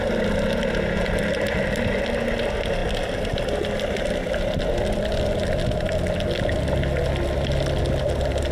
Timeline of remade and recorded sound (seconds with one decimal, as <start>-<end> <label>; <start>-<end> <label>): 0.0-8.5 recorded